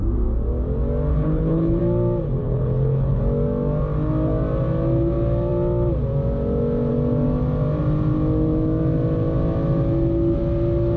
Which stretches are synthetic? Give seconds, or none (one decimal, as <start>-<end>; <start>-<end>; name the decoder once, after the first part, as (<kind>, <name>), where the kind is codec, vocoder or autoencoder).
1.1-1.8 (codec, HILCodec); 2.4-3.2